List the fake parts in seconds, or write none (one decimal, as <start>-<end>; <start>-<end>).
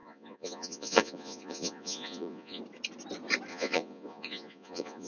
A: 0.0-2.6; 3.5-5.1